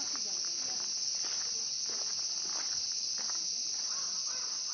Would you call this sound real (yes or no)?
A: yes